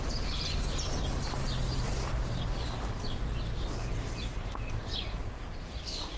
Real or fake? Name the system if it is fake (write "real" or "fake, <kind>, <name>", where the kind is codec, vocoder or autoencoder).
real